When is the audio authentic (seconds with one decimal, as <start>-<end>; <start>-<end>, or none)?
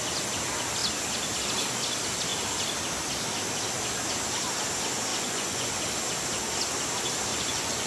0.0-5.1; 5.8-7.3